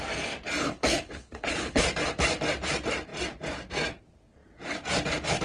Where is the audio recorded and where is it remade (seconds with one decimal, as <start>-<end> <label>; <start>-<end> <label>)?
0.0-0.6 recorded; 0.6-1.8 remade; 1.8-5.4 recorded